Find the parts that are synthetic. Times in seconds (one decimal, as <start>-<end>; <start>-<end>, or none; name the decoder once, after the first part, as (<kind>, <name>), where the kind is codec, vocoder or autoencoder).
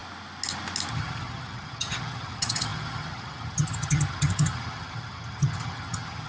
0.9-6.3 (vocoder, HiFi-GAN)